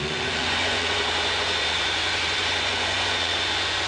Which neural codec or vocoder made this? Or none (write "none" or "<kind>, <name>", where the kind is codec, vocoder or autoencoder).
vocoder, Vocos